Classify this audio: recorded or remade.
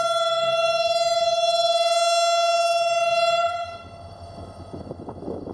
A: remade